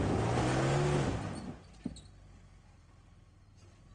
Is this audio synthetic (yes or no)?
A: no